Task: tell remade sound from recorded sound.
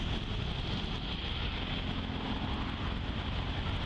recorded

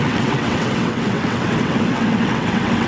remade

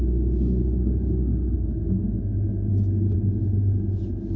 recorded